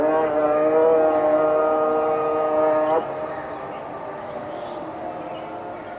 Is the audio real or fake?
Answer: real